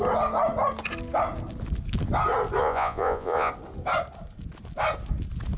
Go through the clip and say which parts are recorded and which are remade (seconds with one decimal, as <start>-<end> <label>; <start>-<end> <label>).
0.0-2.6 recorded; 2.6-3.5 remade; 3.5-5.6 recorded